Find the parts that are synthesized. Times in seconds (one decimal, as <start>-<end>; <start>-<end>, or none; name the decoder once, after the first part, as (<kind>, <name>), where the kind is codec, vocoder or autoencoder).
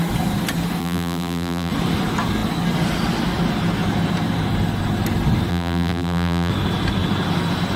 0.8-1.7 (vocoder, BigVGAN v2); 5.5-6.5